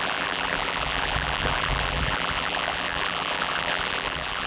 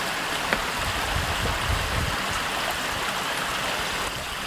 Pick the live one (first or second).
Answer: second